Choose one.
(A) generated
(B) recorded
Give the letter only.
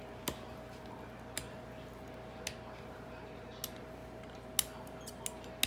B